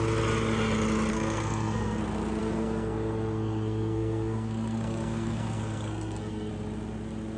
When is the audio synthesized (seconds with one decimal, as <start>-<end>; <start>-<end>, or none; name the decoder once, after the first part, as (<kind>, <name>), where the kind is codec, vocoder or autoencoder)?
1.1-2.0 (codec, SNAC); 2.4-6.5